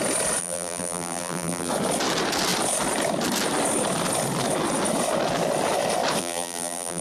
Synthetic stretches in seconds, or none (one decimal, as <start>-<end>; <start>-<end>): 0.4-1.7; 6.2-7.0